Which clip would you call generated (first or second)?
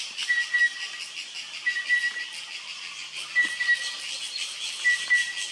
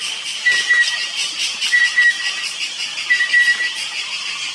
second